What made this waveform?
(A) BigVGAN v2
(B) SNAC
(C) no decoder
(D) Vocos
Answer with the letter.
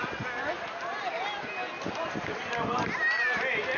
C